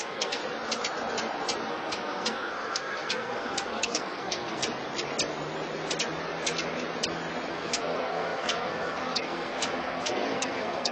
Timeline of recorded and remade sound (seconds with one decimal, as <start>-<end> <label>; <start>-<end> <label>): 0.0-0.4 remade; 0.4-1.7 recorded; 1.7-4.6 remade; 4.6-7.5 recorded; 7.5-10.9 remade